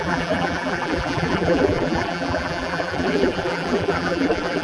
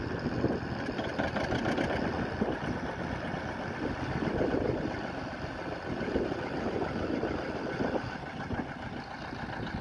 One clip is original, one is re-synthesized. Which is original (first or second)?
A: second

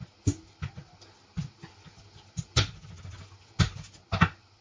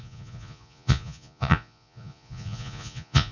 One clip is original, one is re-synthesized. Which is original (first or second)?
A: first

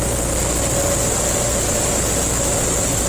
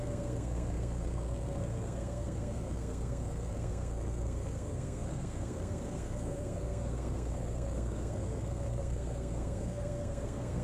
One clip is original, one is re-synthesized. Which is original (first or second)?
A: first